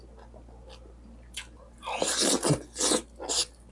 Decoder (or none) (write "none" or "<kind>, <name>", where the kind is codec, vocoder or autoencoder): none